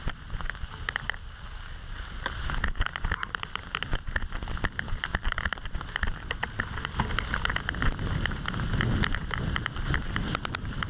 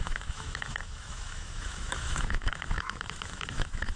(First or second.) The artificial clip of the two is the second